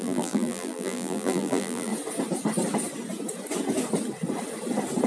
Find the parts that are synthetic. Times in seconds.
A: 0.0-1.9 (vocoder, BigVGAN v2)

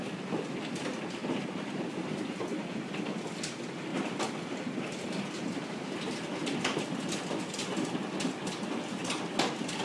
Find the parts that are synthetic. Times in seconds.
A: 1.2-2.1 (vocoder, BigVGAN v2)

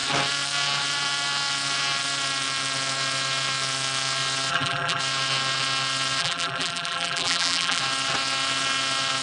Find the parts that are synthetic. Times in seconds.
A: 4.5-5.0 (vocoder, BigVGAN v2); 6.2-7.8

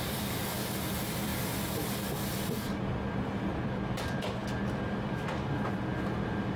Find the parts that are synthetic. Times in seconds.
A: 0.0-1.3 (vocoder, BigVGAN v2); 3.3-6.6

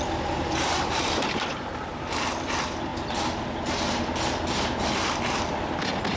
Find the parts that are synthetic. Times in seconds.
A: 0.0-2.9 (vocoder, BigVGAN v2); 5.0-6.2

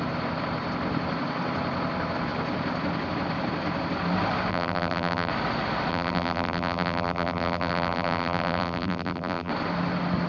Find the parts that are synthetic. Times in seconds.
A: 4.5-5.3 (vocoder, BigVGAN v2); 5.9-9.5